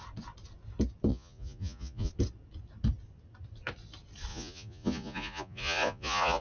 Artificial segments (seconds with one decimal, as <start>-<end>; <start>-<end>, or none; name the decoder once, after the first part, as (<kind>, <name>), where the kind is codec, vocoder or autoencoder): 1.1-2.1 (vocoder, Vocos); 4.3-6.4